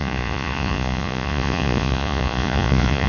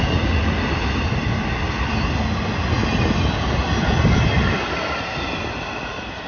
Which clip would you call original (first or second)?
second